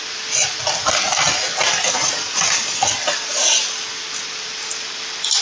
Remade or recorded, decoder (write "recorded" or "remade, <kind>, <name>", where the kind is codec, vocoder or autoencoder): recorded